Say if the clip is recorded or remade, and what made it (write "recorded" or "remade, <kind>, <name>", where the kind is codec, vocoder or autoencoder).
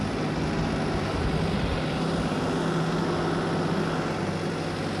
recorded